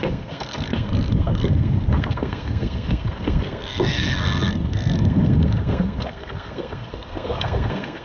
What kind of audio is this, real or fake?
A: fake